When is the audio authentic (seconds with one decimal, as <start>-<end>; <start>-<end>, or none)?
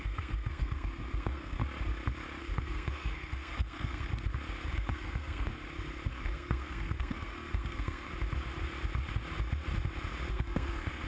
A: 1.6-2.4; 4.1-4.7; 5.5-6.1; 8.1-10.3